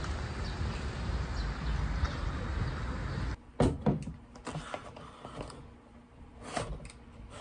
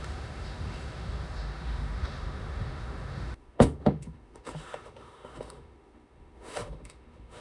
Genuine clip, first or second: first